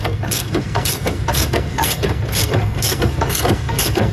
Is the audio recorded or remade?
remade